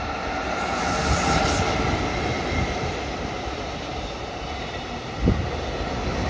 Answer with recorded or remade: recorded